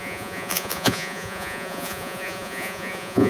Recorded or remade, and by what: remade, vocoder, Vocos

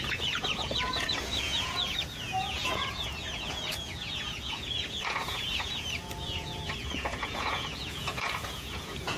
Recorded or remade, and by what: remade, vocoder, Vocos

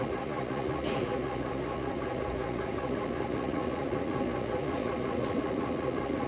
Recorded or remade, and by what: remade, vocoder, Vocos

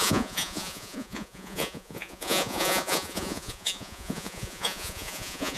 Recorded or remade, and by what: remade, vocoder, Vocos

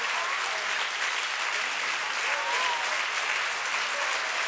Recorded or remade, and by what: recorded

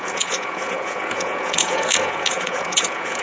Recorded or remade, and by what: remade, vocoder, Vocos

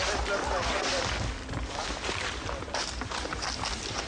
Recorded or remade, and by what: recorded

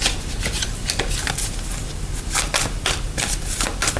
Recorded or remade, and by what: recorded